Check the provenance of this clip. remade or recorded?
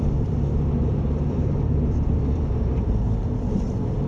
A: remade